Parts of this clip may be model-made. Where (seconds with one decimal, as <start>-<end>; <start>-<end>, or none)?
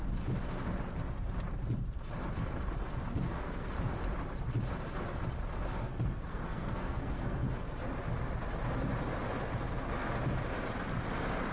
3.1-3.7; 5.8-7.5